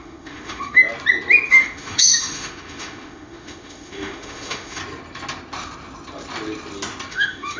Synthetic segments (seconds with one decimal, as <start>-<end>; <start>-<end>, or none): 0.0-0.8; 1.5-4.8; 7.1-7.6